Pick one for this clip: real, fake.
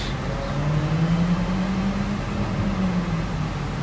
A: real